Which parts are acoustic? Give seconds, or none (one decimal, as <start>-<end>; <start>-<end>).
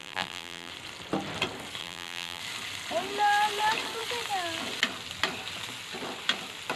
0.7-1.8; 2.4-6.8